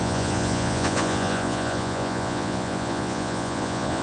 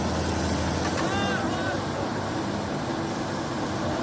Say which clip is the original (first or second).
second